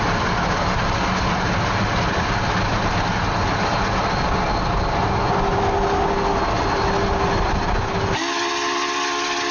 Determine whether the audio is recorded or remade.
recorded